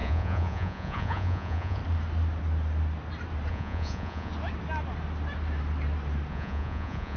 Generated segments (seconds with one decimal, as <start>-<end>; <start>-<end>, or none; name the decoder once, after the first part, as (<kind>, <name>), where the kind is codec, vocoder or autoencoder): 0.0-1.8 (vocoder, Vocos); 3.5-4.3; 6.3-7.2